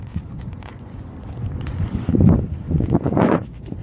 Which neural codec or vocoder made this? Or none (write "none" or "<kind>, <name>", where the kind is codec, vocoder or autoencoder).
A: vocoder, Vocos